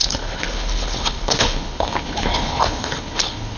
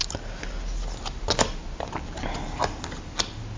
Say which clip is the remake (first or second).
first